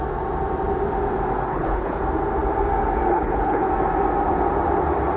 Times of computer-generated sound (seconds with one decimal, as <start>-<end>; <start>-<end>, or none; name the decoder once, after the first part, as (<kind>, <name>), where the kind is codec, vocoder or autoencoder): 1.5-2.0 (codec, HILCodec); 3.1-3.7